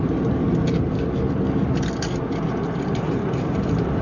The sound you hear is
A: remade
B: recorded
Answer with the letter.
B